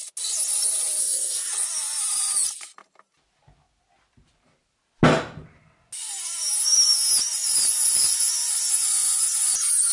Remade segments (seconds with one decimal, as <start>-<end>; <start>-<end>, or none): 1.0-1.5